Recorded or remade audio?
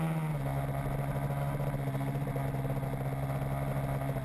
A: recorded